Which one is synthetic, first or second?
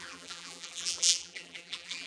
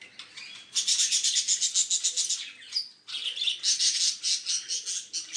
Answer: first